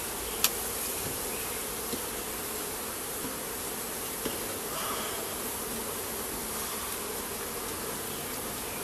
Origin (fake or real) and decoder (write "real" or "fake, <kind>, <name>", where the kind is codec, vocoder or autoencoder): real